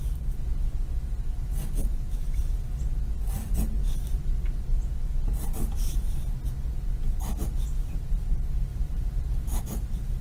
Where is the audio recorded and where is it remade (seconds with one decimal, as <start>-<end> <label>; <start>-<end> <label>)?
0.0-1.8 recorded; 1.8-2.4 remade; 2.4-8.7 recorded; 8.7-9.6 remade; 9.6-10.2 recorded